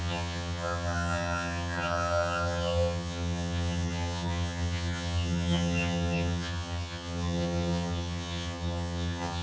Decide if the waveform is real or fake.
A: fake